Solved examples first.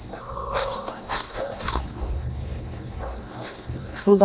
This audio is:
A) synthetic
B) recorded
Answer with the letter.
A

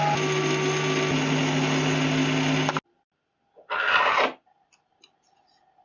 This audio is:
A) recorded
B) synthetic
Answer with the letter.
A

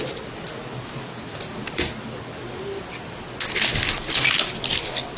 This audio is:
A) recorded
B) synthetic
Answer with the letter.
A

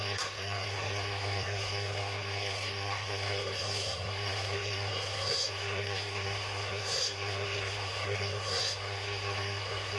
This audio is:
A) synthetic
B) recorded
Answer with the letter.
A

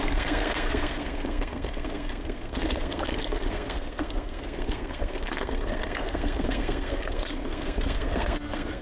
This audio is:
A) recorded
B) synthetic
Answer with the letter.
B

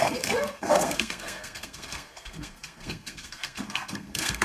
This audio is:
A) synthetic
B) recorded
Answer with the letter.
A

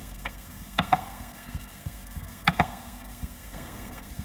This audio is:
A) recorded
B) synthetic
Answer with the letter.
B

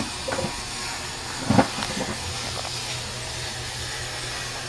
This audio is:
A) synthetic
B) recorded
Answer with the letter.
B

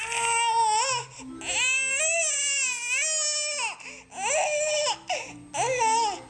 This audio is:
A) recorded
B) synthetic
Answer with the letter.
A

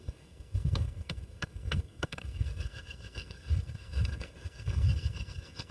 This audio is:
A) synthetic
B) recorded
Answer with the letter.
A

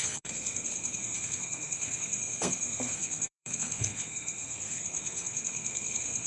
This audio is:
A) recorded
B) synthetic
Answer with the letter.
B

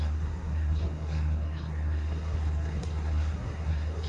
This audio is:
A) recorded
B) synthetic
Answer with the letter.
B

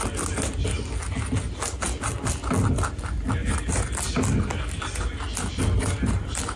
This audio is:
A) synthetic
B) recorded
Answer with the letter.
B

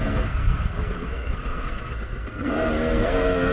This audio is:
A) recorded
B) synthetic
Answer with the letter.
B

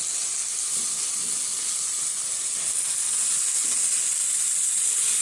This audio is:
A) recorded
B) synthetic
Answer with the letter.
A